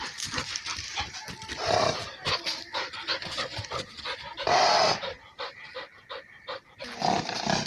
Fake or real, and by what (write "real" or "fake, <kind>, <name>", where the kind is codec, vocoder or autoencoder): real